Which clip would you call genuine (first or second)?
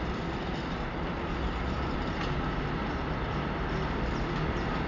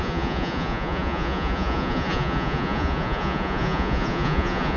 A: first